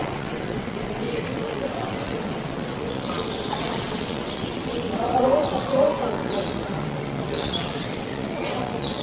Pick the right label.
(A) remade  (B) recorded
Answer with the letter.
A